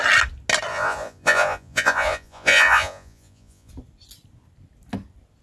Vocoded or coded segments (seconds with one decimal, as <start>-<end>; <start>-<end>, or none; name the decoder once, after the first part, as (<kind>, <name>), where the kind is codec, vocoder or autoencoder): 0.7-3.7 (vocoder, Vocos)